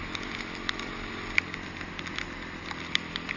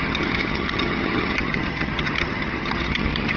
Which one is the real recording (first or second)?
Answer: first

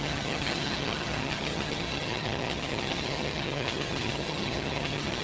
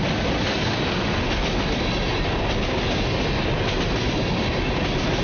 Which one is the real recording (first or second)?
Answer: second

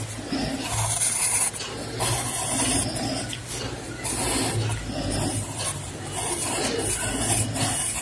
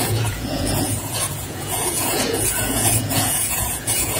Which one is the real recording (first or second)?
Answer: first